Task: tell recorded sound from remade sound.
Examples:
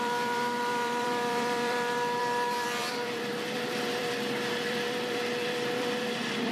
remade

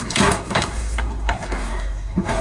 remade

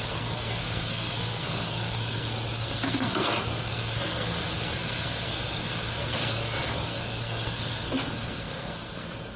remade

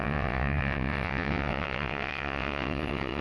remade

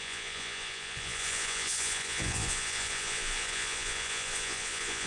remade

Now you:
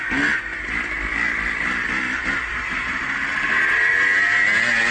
recorded